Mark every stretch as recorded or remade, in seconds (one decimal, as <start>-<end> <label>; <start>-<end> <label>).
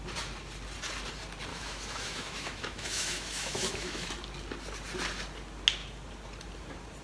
0.0-1.5 recorded; 1.5-4.1 remade; 4.1-7.0 recorded